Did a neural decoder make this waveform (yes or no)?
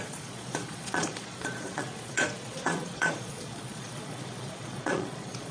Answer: yes